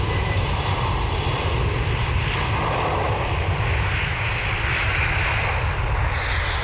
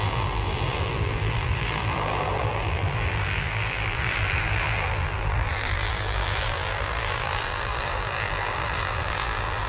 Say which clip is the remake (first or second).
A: second